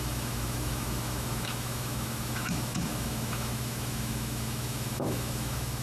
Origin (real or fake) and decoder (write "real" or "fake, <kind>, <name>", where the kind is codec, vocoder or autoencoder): fake, autoencoder, DAC-VAE